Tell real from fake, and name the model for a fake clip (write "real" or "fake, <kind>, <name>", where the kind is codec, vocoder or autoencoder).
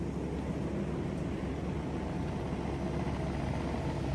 real